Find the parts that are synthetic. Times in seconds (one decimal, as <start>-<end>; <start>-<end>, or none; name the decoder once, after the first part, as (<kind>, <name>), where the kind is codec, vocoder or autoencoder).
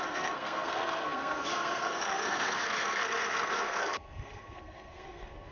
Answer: 0.0-5.5 (codec, SNAC)